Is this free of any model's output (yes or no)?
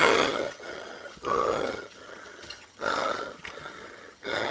no